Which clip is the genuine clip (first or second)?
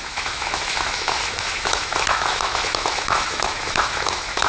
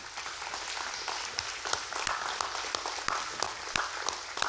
second